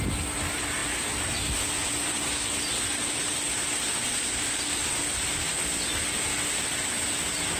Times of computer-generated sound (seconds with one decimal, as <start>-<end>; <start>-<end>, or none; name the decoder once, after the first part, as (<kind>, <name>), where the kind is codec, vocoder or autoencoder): none